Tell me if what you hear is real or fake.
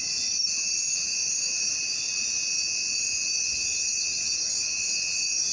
real